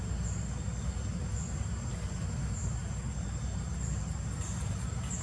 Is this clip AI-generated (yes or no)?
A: no